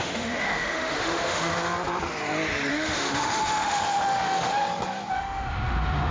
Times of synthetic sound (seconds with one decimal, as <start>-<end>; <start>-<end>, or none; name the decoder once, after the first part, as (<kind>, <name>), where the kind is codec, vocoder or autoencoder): 0.0-1.5 (autoencoder, DAC-VAE); 2.7-4.6; 5.1-6.1